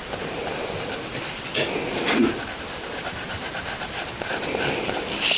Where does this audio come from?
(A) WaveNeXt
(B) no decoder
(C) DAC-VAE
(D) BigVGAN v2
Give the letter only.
D